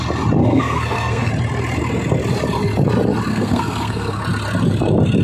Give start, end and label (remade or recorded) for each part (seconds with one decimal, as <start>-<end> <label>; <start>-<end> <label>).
0.0-0.4 recorded; 0.4-1.3 remade; 1.3-3.3 recorded; 3.3-4.2 remade; 4.2-5.2 recorded